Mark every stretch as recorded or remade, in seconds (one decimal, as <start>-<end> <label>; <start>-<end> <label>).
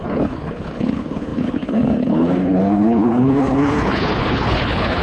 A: 0.0-5.0 remade